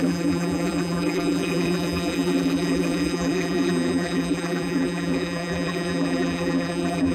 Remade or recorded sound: remade